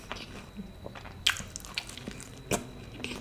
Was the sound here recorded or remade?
recorded